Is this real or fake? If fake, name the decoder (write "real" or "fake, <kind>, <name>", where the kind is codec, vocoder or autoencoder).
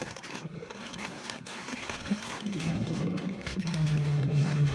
fake, codec, SNAC